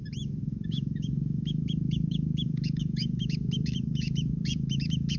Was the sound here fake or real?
fake